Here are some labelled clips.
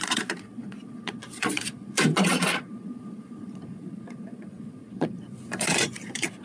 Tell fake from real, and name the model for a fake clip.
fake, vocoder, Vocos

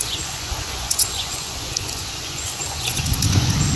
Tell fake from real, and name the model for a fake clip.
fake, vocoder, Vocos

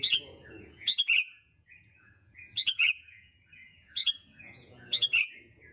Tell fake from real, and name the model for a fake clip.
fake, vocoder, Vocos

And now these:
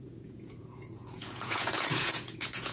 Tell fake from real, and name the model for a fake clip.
fake, vocoder, Vocos